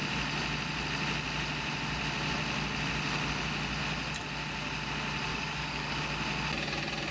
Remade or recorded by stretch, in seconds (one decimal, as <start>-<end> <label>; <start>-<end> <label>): 0.0-5.3 recorded; 5.3-6.0 remade; 6.0-7.1 recorded